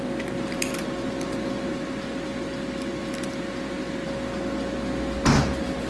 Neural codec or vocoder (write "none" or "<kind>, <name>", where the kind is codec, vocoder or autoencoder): none